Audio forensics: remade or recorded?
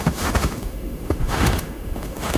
remade